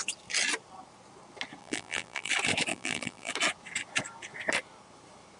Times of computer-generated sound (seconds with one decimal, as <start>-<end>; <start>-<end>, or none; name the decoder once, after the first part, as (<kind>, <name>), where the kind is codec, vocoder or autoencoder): 1.6-2.3 (vocoder, BigVGAN v2); 2.7-3.3